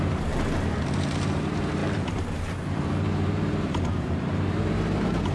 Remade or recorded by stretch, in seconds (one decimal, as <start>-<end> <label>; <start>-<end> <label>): 0.0-5.3 remade